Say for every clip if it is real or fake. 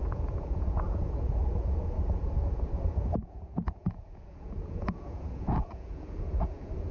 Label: fake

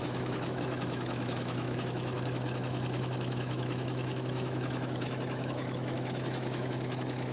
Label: fake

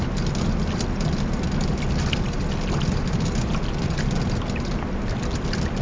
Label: real